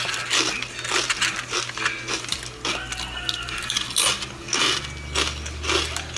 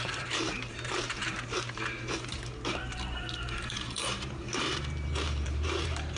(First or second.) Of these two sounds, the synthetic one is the second